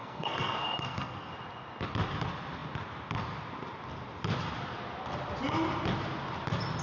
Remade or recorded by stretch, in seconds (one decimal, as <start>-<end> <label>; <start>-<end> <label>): 0.0-1.3 remade; 1.3-6.8 recorded